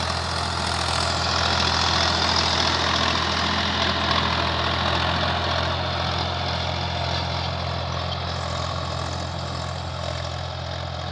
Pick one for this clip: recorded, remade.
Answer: recorded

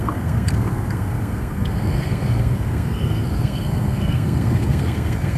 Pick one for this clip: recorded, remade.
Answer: remade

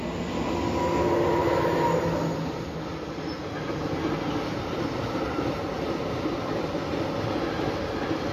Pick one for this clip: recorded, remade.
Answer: recorded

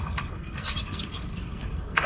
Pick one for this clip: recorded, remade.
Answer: remade